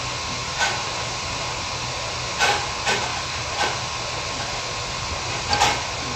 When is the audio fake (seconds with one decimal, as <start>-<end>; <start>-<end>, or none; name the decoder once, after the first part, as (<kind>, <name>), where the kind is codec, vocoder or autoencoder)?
0.4-0.9 (vocoder, BigVGAN v2); 3.1-3.8